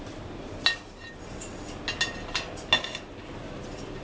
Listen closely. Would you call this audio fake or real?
real